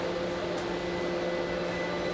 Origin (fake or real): real